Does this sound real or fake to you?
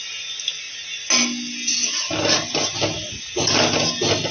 real